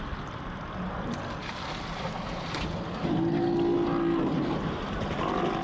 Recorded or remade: recorded